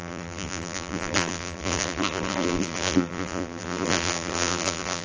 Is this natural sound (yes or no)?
no